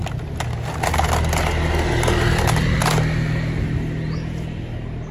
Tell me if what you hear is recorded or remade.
recorded